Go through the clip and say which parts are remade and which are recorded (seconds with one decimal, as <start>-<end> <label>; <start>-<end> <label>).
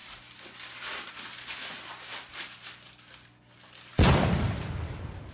0.0-5.3 recorded